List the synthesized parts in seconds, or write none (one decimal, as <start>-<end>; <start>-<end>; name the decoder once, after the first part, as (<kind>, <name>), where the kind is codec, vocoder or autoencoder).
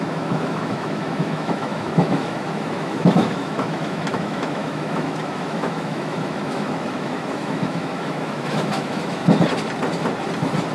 0.0-9.2 (autoencoder, DAC-VAE)